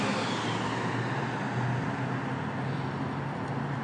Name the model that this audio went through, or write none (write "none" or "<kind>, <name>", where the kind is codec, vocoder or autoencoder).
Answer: none